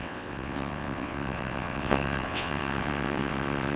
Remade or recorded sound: remade